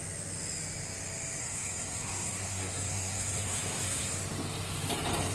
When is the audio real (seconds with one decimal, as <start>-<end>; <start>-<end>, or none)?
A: 0.0-1.4; 4.2-5.3